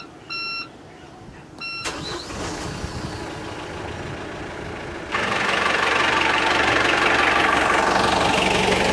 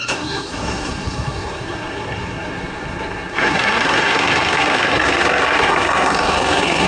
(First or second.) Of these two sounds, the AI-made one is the second